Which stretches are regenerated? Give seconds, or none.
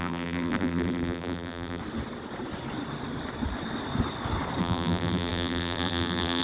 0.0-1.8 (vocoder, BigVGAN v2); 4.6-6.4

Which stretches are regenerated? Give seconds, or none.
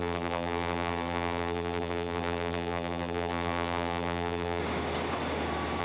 0.0-4.6 (vocoder, BigVGAN v2)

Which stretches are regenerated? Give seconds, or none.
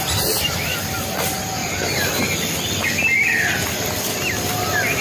none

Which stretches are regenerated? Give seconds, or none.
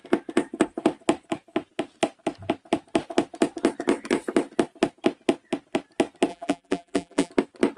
6.3-7.3 (vocoder, BigVGAN v2)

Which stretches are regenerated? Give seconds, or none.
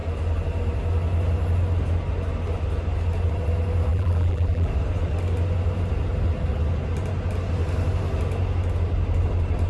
3.9-4.7 (vocoder, BigVGAN v2)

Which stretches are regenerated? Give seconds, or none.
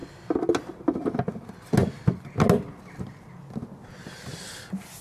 none